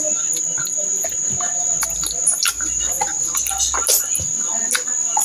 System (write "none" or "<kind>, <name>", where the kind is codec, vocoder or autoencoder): none